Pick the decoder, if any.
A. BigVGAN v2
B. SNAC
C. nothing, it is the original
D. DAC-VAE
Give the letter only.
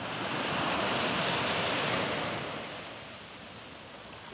C